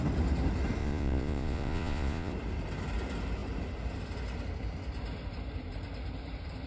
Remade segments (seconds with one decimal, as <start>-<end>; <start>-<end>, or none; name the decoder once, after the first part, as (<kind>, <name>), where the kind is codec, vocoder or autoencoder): 0.8-2.3 (vocoder, Vocos)

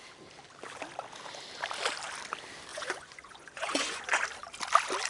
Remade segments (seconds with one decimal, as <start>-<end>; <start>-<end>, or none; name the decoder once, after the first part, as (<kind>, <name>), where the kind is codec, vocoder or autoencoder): 2.7-4.2 (vocoder, Vocos)

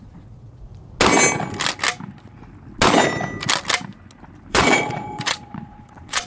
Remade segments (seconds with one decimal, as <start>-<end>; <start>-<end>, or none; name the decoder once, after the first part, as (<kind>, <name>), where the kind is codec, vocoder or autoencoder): 0.0-0.7 (vocoder, Vocos); 4.5-6.3